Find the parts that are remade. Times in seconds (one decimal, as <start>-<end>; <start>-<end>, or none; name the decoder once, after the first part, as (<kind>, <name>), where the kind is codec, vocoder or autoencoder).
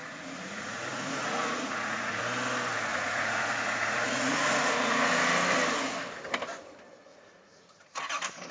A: 0.0-2.2 (vocoder, Vocos); 2.9-5.1; 7.1-8.0